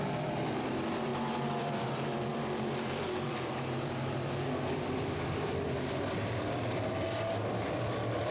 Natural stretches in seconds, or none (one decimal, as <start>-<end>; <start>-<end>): 1.1-1.6